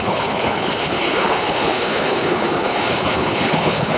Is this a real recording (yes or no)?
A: no